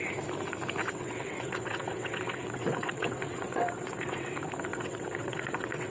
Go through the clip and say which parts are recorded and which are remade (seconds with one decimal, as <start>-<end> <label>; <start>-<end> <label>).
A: 0.0-0.8 recorded; 0.8-4.3 remade; 4.3-4.7 recorded; 4.7-5.9 remade

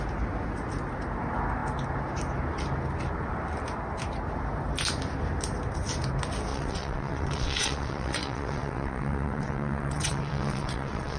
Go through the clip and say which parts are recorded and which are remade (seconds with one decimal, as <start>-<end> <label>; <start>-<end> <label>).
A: 0.0-6.5 recorded; 6.5-11.2 remade

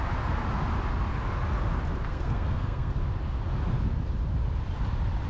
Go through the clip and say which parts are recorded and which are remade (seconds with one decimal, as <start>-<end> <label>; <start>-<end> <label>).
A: 0.0-2.1 recorded; 2.1-2.9 remade; 2.9-5.3 recorded